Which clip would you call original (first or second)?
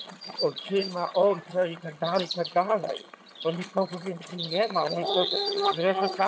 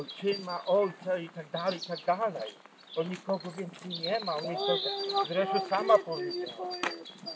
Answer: second